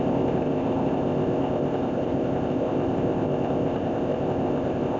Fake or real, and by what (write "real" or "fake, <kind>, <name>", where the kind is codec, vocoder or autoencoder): fake, codec, ZipCodec